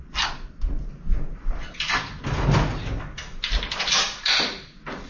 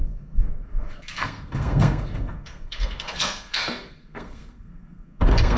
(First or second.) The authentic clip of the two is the first